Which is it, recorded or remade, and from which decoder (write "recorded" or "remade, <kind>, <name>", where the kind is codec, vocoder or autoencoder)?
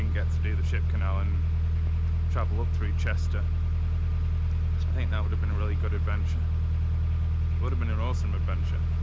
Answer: recorded